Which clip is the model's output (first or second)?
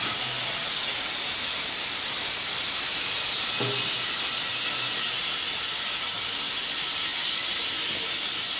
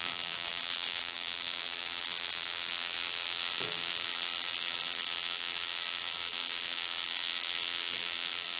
second